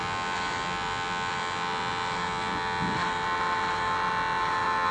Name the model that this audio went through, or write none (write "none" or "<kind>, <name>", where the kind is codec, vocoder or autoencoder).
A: none